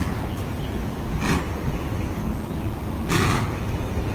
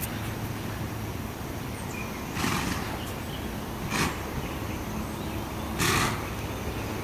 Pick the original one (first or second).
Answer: second